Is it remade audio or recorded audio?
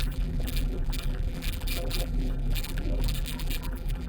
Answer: remade